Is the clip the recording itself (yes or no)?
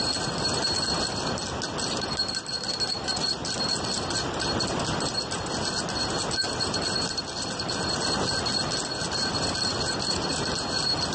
yes